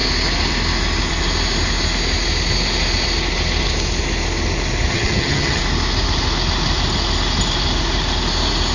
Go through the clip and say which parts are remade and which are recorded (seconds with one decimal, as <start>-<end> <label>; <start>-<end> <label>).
0.0-4.9 recorded; 4.9-5.6 remade; 5.6-8.7 recorded